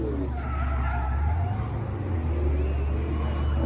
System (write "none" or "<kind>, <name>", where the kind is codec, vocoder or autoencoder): none